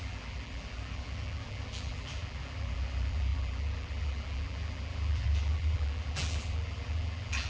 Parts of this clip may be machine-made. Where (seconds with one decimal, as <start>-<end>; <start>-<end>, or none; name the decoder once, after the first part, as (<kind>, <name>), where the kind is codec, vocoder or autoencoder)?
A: 0.0-7.5 (vocoder, BigVGAN v2)